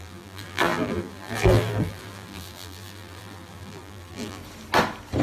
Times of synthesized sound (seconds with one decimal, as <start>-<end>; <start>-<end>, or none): 0.0-4.4